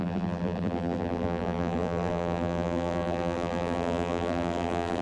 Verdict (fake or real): fake